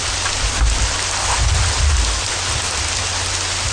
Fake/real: real